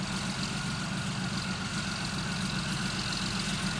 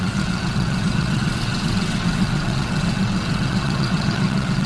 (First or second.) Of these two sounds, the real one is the first